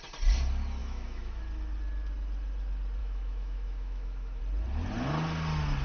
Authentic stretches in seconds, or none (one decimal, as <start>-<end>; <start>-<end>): 0.0-0.8; 1.4-3.0; 4.4-5.8